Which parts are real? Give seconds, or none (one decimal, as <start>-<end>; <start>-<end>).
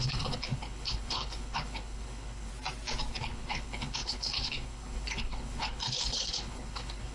2.5-3.1